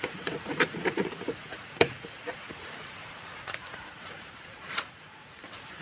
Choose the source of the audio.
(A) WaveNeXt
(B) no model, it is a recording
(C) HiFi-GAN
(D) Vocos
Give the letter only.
D